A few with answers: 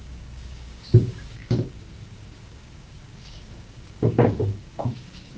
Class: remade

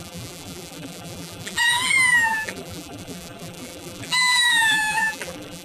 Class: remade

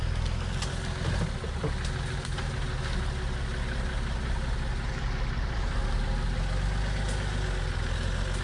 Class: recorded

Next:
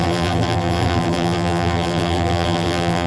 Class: remade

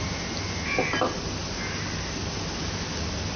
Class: recorded